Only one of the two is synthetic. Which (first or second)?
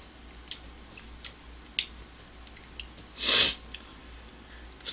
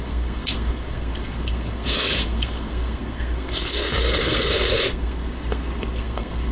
second